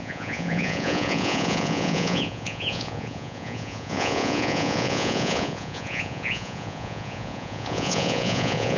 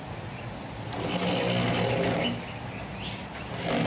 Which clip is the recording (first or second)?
second